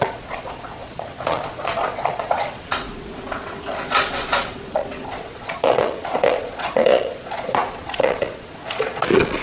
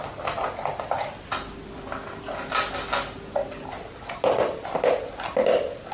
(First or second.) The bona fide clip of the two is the second